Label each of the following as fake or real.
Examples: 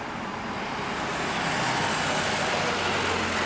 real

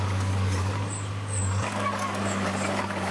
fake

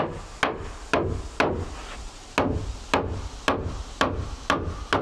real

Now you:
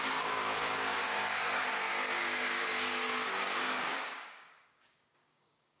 fake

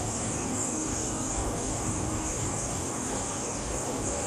fake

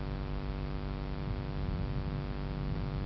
real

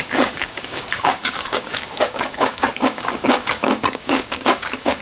fake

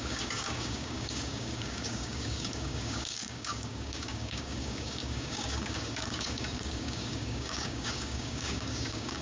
fake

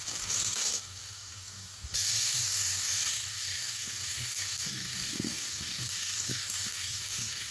fake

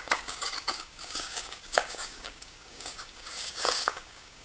fake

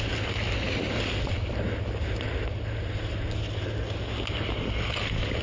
real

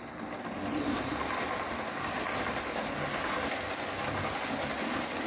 real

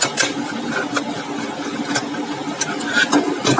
real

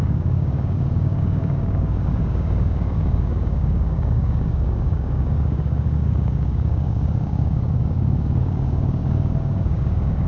fake